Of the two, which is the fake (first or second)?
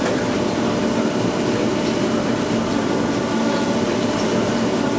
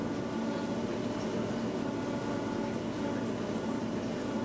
first